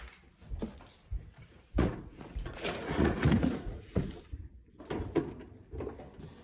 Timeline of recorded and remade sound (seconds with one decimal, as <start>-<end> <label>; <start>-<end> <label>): 0.0-1.0 recorded; 1.0-4.0 remade; 4.0-6.4 recorded